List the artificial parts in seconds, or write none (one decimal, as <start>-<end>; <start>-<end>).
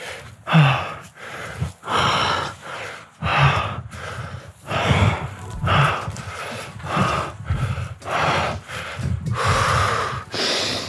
3.3-5.9